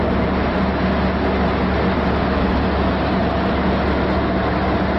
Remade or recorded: recorded